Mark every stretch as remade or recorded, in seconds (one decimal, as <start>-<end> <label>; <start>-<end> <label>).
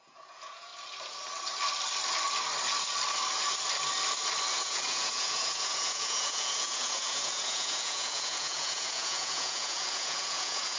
0.0-0.7 remade; 0.7-4.5 recorded; 4.5-10.8 remade